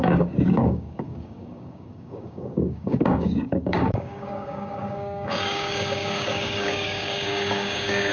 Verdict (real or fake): fake